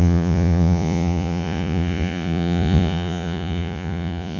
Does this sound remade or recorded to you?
remade